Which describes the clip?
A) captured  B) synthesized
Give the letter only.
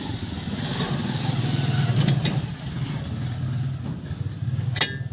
A